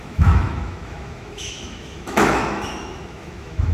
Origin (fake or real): fake